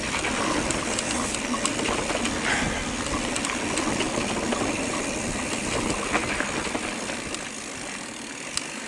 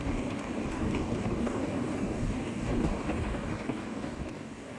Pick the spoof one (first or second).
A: second